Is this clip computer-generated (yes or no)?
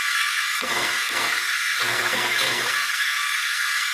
yes